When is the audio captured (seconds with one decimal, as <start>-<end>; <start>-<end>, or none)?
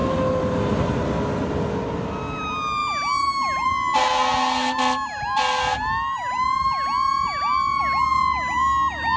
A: 0.0-9.2